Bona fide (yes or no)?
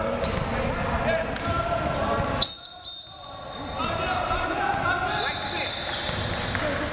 yes